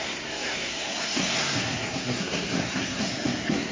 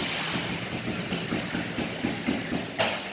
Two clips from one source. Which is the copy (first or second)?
first